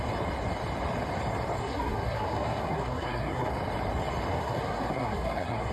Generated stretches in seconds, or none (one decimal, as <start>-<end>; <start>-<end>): 1.6-3.5; 4.3-5.7